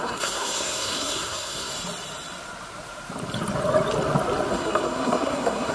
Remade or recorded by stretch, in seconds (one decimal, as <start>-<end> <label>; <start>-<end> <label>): 0.0-1.7 remade; 1.7-4.5 recorded; 4.5-5.7 remade